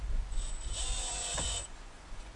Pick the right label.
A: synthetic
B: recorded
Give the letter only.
A